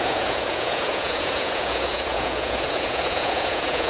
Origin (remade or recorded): remade